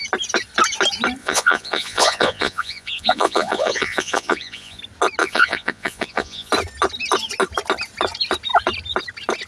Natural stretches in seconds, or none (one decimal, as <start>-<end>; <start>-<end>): 0.0-1.2; 4.8-5.2; 6.5-9.5